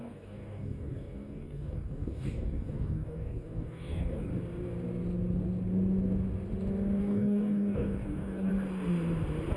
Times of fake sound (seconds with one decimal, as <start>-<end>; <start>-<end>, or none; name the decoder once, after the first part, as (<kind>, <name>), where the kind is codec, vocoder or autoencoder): 0.0-4.3 (codec, DAC); 7.0-8.5